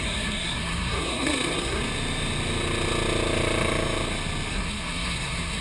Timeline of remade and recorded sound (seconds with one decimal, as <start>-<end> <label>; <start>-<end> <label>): 0.0-1.8 remade; 1.8-4.5 recorded; 4.5-5.6 remade